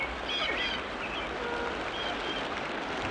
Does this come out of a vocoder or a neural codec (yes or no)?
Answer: no